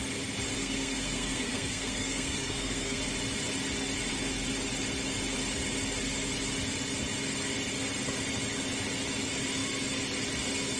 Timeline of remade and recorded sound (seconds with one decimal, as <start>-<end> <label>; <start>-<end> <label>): 0.0-0.6 recorded; 0.6-3.0 remade; 3.0-10.8 recorded